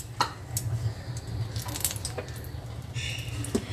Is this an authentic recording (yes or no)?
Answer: yes